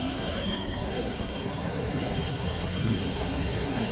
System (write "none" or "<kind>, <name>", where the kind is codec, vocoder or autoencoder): codec, SNAC